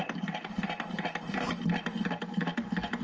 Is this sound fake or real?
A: real